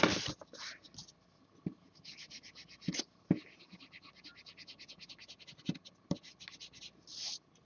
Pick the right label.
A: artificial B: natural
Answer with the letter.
B